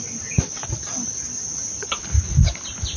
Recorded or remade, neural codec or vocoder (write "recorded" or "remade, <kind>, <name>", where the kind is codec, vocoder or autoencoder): recorded